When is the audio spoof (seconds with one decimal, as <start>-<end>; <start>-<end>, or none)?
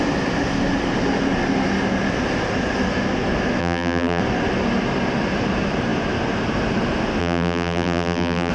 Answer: 3.6-4.2; 7.2-8.5